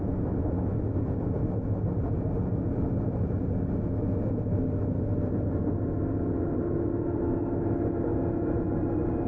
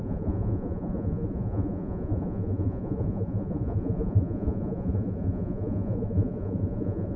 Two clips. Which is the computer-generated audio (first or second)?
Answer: second